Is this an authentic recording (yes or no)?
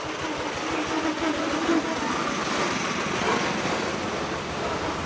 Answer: yes